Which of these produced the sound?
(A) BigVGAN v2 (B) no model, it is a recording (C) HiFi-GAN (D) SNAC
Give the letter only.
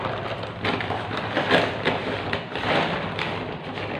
B